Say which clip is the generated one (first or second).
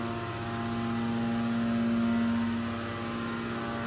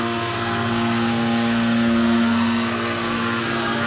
second